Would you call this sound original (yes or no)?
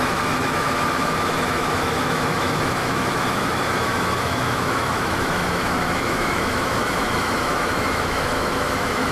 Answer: no